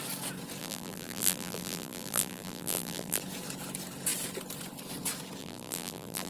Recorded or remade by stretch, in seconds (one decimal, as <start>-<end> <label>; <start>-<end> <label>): 0.0-0.6 recorded; 0.6-3.2 remade; 3.2-5.4 recorded; 5.4-6.3 remade